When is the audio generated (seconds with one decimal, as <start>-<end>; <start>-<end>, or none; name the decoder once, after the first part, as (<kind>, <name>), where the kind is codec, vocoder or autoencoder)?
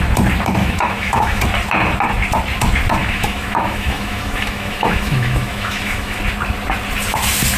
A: 0.6-1.4 (autoencoder, DAC-VAE); 3.0-6.2